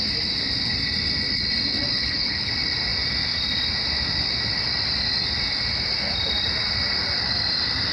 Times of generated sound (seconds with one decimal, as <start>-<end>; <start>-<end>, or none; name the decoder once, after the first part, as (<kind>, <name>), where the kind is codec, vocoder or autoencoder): 1.9-2.5 (codec, HILCodec)